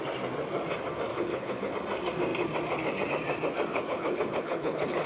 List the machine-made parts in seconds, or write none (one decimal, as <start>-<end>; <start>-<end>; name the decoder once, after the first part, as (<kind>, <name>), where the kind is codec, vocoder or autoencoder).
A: 1.1-1.7 (codec, HILCodec); 3.7-5.1